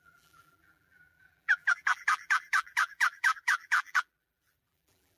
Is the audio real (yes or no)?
no